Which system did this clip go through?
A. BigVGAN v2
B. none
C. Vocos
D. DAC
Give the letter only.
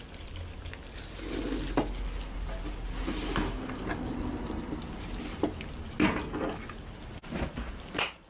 B